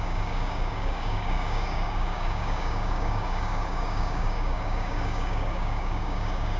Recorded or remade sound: remade